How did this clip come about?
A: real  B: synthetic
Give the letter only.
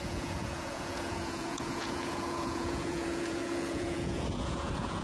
B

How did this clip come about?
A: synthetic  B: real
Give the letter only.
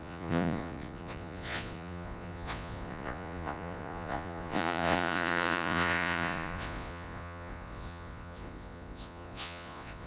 A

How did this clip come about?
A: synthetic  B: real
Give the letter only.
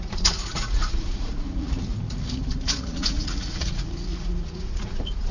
A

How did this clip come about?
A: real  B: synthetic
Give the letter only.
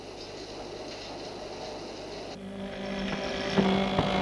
A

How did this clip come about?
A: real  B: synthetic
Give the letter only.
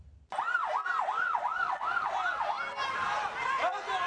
A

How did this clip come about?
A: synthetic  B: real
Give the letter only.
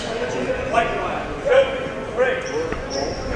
A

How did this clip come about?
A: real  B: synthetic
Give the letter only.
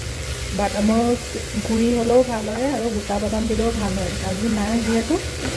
B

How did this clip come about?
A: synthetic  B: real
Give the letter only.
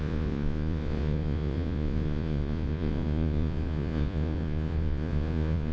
A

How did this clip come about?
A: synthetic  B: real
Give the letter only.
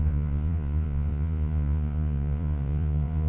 A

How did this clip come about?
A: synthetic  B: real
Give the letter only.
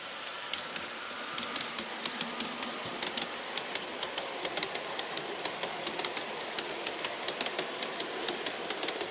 B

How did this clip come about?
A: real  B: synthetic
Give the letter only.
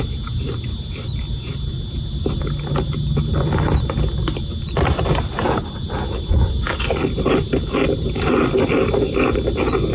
A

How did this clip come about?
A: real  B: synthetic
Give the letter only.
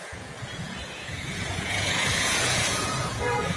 B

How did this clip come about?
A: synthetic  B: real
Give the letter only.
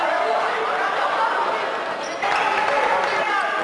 B